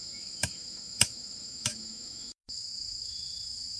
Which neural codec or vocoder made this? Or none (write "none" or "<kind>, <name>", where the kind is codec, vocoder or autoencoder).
autoencoder, DAC-VAE